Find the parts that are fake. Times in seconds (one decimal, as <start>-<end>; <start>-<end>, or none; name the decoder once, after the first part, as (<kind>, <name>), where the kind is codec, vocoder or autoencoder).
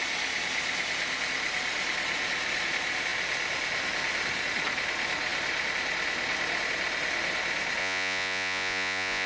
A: 7.8-9.3 (vocoder, Vocos)